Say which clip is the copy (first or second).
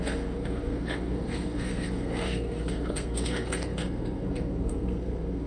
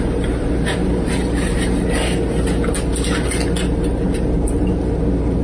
first